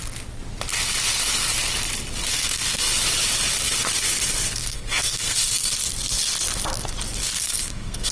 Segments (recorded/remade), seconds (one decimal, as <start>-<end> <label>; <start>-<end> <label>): 0.0-2.3 recorded; 2.3-2.9 remade; 2.9-4.6 recorded; 4.6-5.7 remade; 5.7-7.2 recorded; 7.2-8.1 remade